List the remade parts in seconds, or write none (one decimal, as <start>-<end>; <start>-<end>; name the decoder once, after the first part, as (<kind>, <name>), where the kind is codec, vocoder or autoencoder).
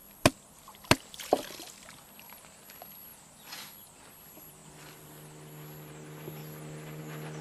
6.4-7.0 (vocoder, BigVGAN v2)